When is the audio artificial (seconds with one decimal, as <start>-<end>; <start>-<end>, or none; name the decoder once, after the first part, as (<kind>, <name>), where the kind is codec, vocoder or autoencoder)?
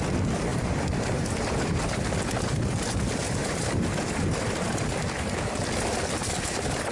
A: 0.5-1.3 (vocoder, BigVGAN v2); 3.4-5.5